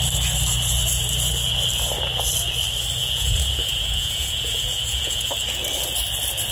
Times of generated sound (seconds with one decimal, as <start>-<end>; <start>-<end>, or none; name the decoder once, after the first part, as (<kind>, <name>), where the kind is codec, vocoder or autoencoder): 3.0-5.3 (vocoder, Vocos)